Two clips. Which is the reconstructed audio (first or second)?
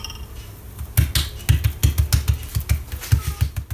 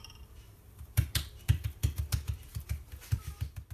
second